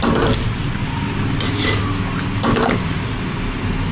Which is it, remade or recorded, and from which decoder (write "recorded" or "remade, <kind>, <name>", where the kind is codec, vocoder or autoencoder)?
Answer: recorded